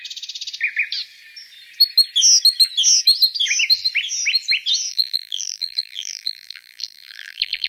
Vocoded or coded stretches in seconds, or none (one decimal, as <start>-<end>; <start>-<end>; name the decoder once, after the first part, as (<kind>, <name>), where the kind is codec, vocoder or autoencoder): 4.9-7.7 (vocoder, BigVGAN v2)

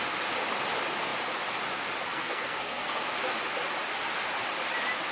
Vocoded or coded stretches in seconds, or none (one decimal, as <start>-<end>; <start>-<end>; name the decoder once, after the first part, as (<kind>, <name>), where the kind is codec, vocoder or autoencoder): 2.1-3.0 (codec, SNAC)

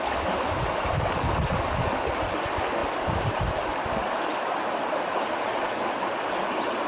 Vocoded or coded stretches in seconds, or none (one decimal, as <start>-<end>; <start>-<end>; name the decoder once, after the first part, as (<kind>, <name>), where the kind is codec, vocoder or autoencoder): 2.8-3.4 (vocoder, BigVGAN v2); 5.1-6.0

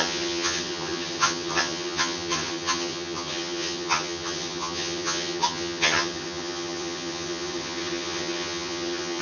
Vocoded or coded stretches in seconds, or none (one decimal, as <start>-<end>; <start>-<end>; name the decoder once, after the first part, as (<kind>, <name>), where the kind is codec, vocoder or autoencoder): 0.0-9.2 (vocoder, HiFi-GAN)